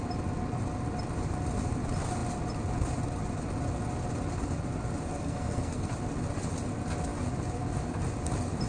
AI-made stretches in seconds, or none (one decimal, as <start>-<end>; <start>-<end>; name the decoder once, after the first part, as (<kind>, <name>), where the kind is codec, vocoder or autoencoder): 5.2-5.9 (codec, SNAC)